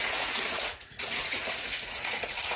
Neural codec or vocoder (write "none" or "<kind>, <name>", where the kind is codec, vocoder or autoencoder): vocoder, Vocos